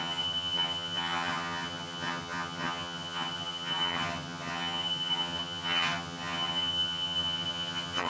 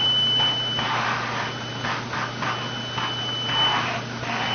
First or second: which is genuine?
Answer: second